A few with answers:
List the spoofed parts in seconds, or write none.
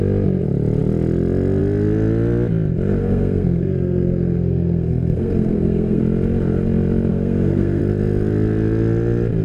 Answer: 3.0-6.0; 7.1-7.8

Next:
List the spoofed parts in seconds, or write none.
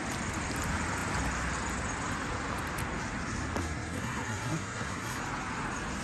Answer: 3.6-5.2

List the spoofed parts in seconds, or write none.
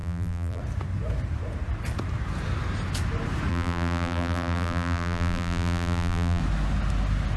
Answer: 0.0-0.6; 3.5-6.4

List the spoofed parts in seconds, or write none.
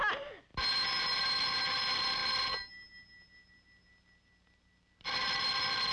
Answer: none